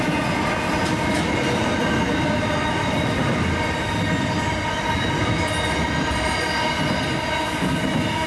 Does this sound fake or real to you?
real